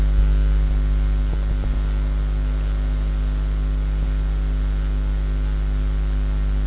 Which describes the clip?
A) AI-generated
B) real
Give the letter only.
B